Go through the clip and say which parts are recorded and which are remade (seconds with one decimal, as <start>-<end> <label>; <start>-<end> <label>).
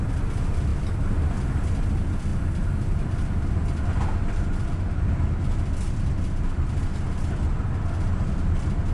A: 0.0-8.9 recorded